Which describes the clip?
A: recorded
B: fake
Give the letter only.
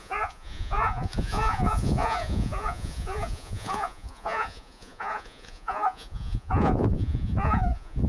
B